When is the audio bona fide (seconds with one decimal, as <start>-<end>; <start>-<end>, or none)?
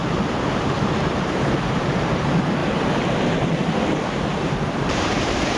0.0-0.8; 2.6-3.3